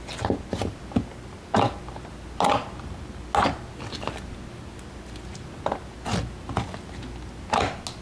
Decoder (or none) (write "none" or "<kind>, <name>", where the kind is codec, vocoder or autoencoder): none